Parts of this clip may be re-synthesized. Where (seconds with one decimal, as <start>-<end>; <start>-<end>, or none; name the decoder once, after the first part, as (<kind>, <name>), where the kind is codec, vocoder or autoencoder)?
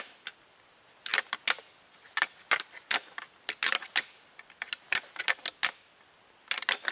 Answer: none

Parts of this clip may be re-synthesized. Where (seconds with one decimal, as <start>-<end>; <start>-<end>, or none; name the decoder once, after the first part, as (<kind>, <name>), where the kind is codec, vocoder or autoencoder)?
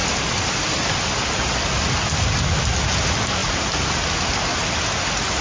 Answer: 3.4-4.0 (vocoder, BigVGAN v2)